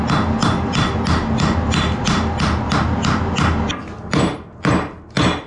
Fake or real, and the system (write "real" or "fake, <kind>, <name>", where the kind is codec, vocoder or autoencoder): real